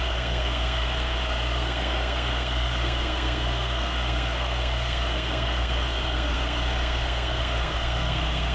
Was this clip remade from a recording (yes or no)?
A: yes